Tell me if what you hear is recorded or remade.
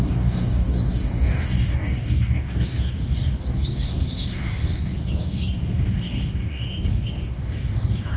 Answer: remade